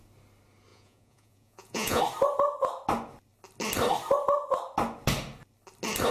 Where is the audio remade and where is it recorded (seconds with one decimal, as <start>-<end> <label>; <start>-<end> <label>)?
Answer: 0.0-0.7 recorded; 0.7-2.0 remade; 2.0-6.1 recorded